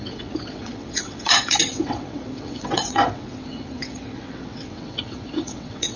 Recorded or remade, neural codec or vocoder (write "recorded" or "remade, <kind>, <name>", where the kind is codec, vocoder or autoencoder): remade, vocoder, WaveNeXt